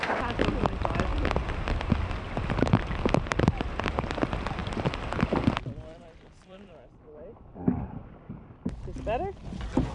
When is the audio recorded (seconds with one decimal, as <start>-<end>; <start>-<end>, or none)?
0.0-4.6; 8.8-9.9